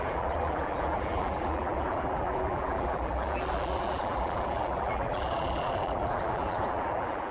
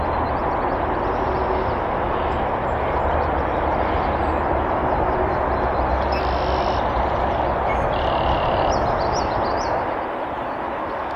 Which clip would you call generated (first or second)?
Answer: first